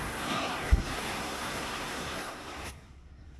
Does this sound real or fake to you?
fake